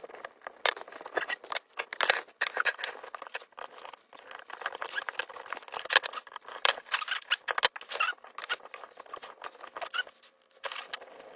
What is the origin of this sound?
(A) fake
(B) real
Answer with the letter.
B